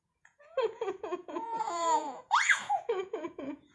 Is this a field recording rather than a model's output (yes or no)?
no